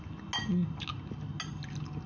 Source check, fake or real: real